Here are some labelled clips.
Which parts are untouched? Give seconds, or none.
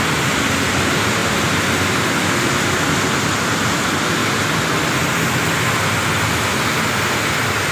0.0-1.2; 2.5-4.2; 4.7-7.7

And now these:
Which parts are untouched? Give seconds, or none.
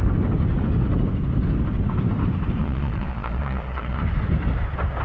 0.0-2.6; 4.0-5.0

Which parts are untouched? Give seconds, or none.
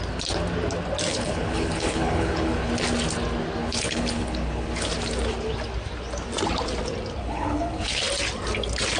0.0-1.1; 2.7-3.6; 4.9-7.2; 8.0-9.0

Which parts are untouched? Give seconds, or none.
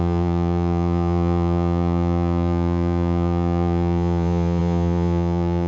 none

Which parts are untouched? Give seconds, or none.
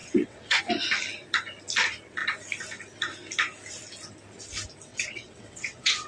0.6-4.9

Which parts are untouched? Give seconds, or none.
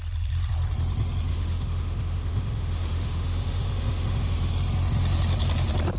0.0-1.3; 4.5-6.0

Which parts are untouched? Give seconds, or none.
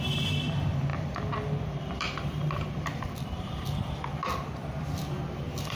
none